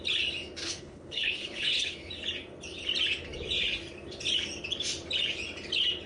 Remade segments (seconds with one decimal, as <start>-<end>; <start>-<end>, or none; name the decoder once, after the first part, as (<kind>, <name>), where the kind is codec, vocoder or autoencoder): 0.6-2.1 (codec, HILCodec)